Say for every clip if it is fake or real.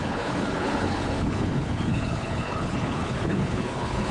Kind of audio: fake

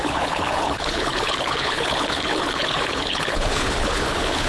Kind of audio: fake